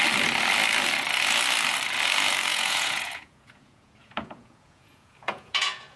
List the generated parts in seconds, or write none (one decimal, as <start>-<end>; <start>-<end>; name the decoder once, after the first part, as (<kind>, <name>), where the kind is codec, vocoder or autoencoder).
2.5-6.0 (vocoder, Vocos)